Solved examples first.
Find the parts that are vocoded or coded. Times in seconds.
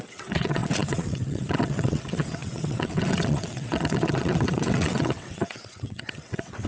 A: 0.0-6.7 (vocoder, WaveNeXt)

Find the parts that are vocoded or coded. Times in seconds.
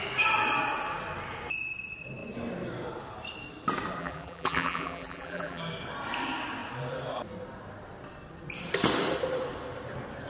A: 4.0-5.6 (vocoder, BigVGAN v2)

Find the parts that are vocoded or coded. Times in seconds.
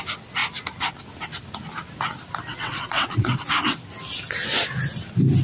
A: 2.5-3.4 (vocoder, WaveNeXt)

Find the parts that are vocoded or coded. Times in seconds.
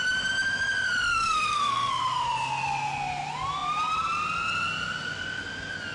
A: 1.1-2.0 (codec, SNAC)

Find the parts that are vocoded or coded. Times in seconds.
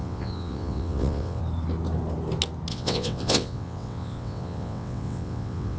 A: 0.0-1.4 (vocoder, WaveNeXt); 2.7-5.8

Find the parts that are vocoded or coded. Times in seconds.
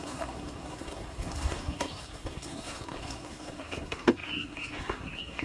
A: 0.0-5.4 (codec, SNAC)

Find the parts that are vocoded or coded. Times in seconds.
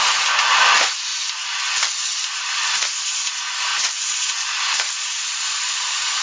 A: 3.7-6.2 (vocoder, Vocos)